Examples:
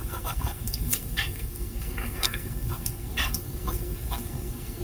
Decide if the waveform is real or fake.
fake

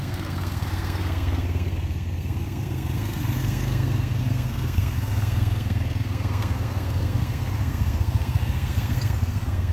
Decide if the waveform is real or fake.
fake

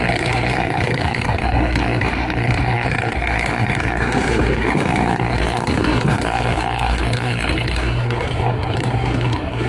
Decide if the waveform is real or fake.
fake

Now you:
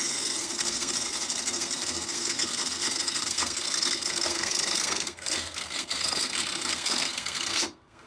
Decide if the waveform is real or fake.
fake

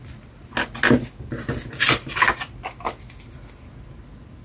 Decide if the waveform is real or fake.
real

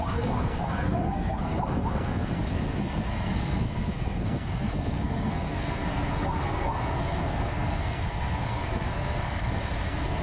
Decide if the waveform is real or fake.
fake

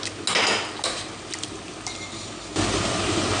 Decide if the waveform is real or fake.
real